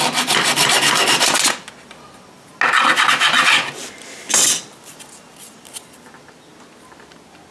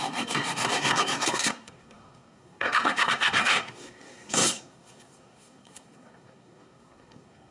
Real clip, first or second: first